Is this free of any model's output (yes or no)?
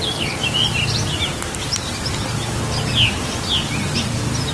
yes